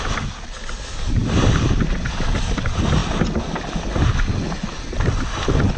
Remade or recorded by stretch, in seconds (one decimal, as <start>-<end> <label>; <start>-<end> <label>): 0.0-5.8 recorded